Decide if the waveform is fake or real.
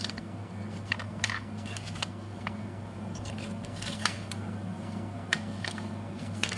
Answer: fake